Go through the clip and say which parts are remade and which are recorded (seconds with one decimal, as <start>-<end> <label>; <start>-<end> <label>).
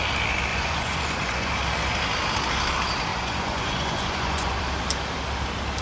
0.0-0.5 recorded; 0.5-1.5 remade; 1.5-3.1 recorded; 3.1-4.6 remade; 4.6-5.8 recorded